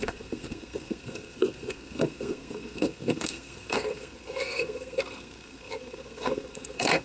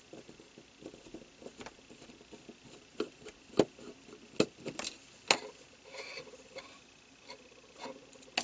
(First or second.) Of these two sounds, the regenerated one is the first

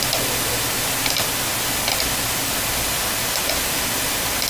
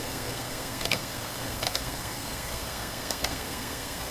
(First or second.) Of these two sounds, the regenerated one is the second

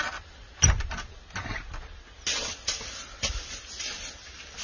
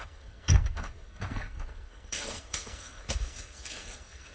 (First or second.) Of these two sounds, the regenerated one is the second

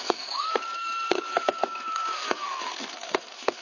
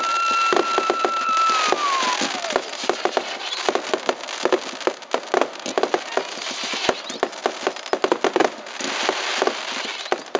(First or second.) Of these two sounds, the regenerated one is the first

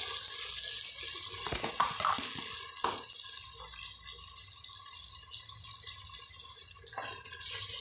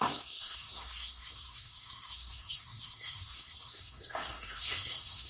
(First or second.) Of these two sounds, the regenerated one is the second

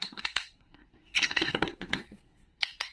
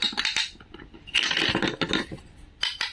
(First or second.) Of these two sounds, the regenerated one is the first